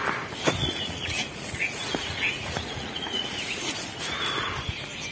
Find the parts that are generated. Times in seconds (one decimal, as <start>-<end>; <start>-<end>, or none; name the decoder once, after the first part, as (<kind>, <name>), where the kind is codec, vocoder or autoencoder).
0.6-3.7 (vocoder, Vocos)